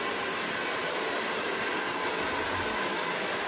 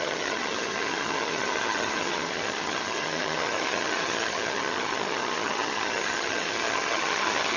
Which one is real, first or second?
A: first